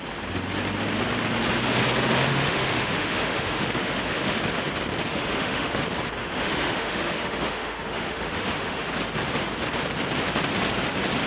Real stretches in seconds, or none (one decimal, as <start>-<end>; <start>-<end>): 0.0-2.3; 4.4-5.1; 5.8-6.2; 8.9-11.3